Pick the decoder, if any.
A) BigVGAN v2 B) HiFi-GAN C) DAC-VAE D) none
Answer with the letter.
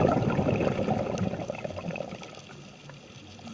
D